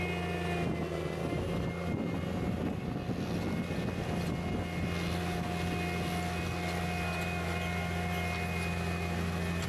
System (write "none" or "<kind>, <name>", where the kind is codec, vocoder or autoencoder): none